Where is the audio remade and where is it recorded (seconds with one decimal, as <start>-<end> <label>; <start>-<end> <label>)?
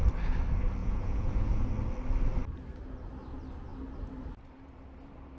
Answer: 0.0-0.8 recorded; 0.8-1.7 remade; 1.7-5.4 recorded